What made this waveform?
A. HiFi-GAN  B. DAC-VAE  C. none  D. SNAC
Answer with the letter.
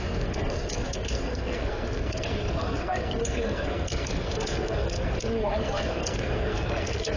D